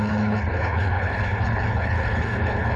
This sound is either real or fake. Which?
fake